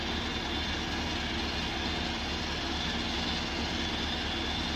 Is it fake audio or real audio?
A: real